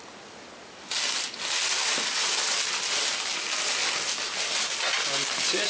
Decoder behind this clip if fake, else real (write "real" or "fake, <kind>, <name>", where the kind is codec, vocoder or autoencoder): real